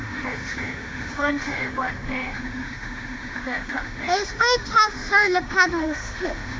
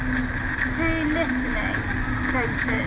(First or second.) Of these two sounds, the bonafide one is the second